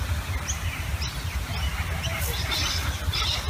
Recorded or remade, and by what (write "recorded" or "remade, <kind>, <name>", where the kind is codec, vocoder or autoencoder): recorded